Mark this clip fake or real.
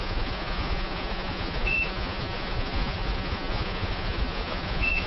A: fake